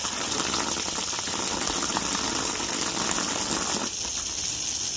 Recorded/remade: recorded